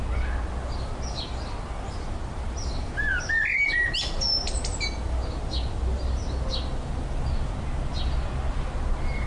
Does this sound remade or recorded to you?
recorded